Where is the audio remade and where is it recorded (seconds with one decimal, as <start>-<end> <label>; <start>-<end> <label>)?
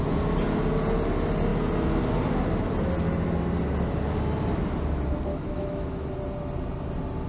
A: 0.0-5.3 recorded; 5.3-6.1 remade; 6.1-7.3 recorded